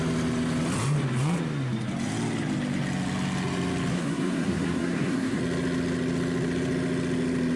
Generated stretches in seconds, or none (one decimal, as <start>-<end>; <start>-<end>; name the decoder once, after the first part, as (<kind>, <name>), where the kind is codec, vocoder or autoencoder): 3.9-5.4 (codec, SNAC)